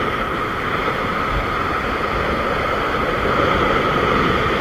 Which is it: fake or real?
real